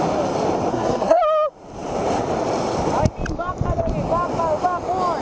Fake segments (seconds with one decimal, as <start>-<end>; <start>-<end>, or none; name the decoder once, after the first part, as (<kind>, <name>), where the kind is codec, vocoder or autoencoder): 0.7-1.2 (codec, SNAC)

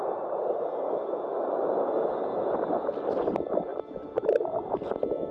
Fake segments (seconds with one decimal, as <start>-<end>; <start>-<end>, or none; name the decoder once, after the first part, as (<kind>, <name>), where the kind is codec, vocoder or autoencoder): none

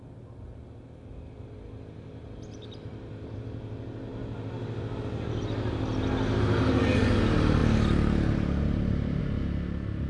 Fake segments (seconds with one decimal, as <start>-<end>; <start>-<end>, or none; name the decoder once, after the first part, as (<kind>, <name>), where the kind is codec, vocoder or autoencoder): none

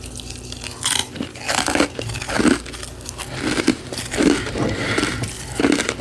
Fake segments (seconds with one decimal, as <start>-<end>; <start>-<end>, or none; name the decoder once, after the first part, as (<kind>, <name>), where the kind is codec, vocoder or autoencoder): none

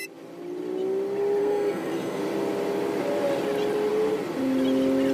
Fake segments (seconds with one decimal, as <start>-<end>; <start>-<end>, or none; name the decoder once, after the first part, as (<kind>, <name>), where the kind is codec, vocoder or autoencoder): 1.4-2.2 (codec, SNAC)

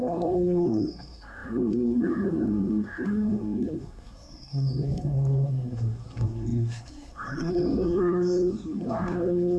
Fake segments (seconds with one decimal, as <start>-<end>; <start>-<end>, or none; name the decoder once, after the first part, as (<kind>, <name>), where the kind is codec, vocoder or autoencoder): 0.0-9.6 (codec, SNAC)

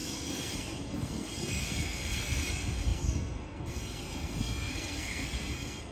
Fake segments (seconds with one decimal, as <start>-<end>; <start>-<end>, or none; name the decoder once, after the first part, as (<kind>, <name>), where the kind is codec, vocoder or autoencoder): 0.0-5.9 (codec, SNAC)

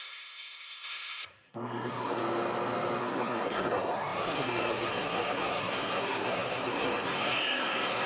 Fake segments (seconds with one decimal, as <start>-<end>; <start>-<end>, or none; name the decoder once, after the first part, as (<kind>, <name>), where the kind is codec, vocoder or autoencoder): 0.0-2.2 (codec, SNAC); 3.0-8.1